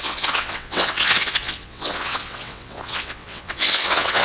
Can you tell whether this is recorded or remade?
remade